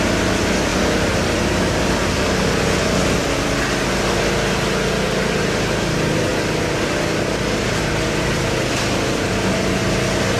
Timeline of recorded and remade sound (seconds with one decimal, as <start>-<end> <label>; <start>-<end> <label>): 0.0-3.2 recorded; 3.2-3.8 remade; 3.8-6.3 recorded; 6.3-9.3 remade; 9.3-10.4 recorded